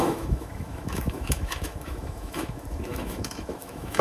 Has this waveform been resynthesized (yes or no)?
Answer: yes